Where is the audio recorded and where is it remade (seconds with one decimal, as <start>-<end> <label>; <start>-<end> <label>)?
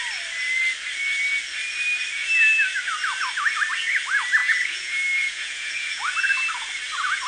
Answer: 0.0-4.4 recorded; 4.4-6.0 remade; 6.0-7.3 recorded